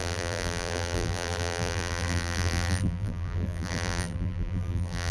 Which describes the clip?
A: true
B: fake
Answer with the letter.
B